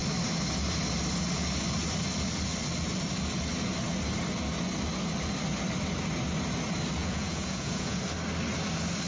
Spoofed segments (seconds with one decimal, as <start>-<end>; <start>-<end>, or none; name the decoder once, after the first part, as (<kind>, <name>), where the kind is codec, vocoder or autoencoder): 7.0-8.0 (vocoder, Vocos)